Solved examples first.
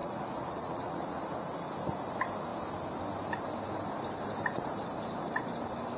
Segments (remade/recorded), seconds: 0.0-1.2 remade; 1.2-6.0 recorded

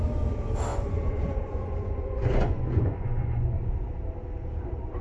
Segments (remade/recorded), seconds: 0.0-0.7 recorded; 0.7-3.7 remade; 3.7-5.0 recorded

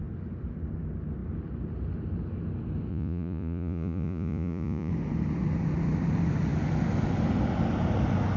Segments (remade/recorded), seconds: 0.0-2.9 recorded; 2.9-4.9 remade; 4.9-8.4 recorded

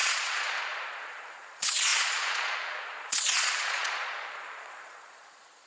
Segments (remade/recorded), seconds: 0.0-5.7 remade

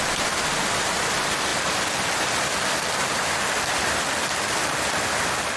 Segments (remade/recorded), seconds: 0.0-5.6 recorded